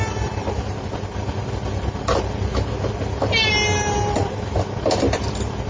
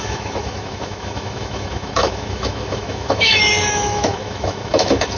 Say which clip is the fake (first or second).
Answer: second